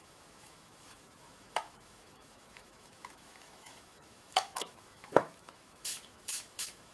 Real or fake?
fake